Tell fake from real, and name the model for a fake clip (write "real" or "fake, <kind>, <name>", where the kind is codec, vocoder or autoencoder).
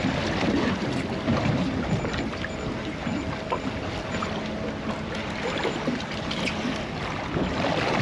real